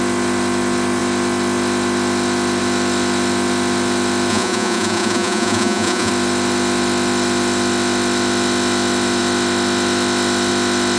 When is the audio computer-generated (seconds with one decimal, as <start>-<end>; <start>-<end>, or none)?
4.3-6.1